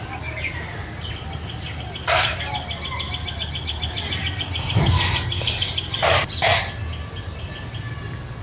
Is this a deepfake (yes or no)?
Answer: no